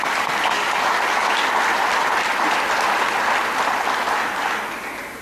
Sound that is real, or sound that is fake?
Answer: real